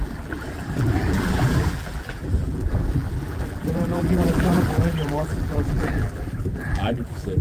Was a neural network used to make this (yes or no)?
yes